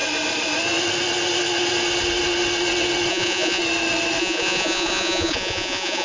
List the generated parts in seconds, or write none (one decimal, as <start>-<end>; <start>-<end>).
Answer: 3.1-3.6; 4.2-6.0